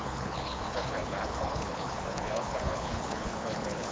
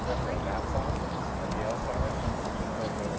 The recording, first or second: second